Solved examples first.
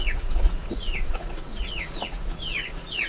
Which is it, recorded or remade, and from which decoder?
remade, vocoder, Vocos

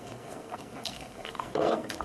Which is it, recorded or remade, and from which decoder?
remade, codec, SNAC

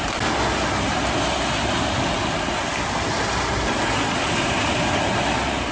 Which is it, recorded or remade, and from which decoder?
recorded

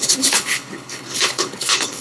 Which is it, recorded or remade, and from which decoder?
remade, codec, HILCodec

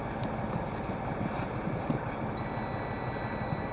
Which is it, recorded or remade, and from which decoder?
recorded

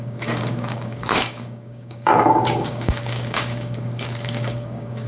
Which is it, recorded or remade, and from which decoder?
remade, codec, DAC